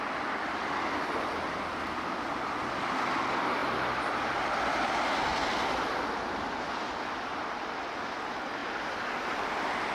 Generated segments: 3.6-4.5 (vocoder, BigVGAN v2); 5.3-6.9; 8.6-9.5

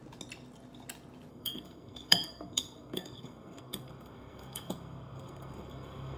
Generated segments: 1.3-6.2 (codec, SNAC)

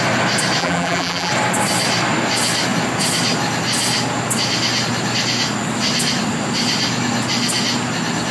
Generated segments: 0.6-1.3 (vocoder, BigVGAN v2)

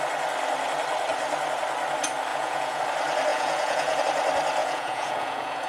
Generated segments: 2.3-2.8 (vocoder, Vocos); 3.3-4.0; 4.6-5.7

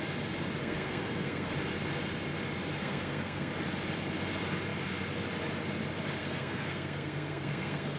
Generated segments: 0.6-1.5 (codec, SNAC); 2.8-3.5; 6.2-8.0